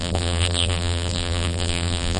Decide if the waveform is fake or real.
fake